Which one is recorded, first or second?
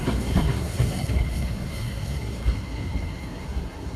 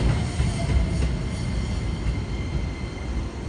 second